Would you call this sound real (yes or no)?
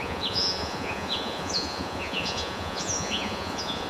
no